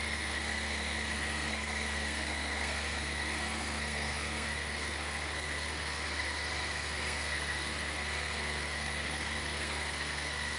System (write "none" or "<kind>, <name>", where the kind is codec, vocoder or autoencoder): codec, SNAC